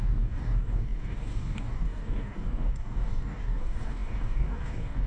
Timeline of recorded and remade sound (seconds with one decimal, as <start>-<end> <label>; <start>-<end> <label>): 0.0-5.1 remade